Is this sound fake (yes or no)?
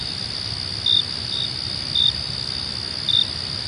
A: no